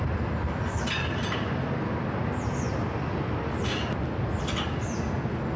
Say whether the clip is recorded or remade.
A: recorded